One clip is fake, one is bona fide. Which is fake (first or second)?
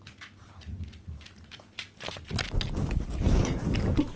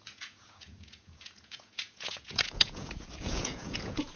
second